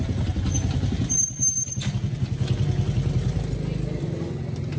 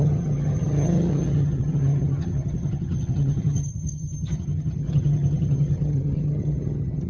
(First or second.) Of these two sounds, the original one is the first